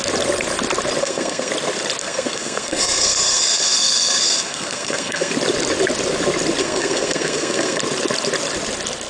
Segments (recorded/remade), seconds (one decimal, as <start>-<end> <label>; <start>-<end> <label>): 0.0-1.0 recorded; 1.0-1.5 remade; 1.5-2.0 recorded; 2.0-5.3 remade; 5.3-6.6 recorded; 6.6-7.8 remade; 7.8-9.1 recorded